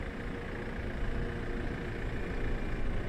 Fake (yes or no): no